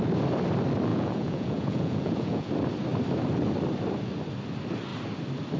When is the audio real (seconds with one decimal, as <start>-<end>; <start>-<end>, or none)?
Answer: 0.0-0.9; 2.5-5.6